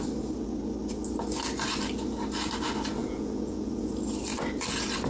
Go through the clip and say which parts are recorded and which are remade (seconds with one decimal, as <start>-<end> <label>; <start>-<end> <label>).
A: 0.0-3.0 recorded; 3.0-3.7 remade; 3.7-5.1 recorded